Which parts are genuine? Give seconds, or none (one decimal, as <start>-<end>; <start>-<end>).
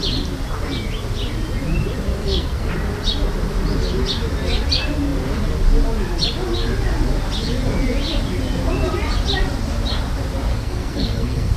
0.0-2.2; 2.7-10.5